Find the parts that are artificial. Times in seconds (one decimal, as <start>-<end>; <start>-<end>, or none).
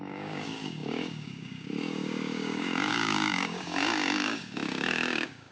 0.0-5.5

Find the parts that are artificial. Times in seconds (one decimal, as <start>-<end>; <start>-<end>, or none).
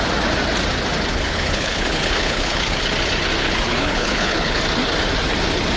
1.1-2.8; 3.4-4.6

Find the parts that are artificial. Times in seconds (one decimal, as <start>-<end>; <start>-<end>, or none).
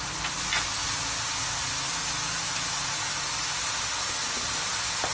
none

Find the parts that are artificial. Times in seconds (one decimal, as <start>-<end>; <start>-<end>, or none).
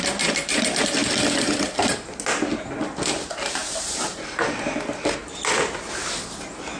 3.6-5.4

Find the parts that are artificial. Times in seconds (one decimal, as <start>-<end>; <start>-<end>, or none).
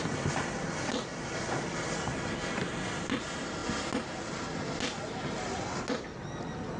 none